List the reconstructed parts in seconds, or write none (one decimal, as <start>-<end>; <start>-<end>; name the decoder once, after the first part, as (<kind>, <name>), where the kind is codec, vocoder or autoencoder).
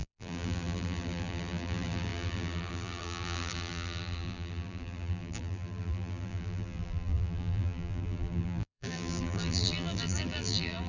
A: 0.0-10.9 (vocoder, BigVGAN v2)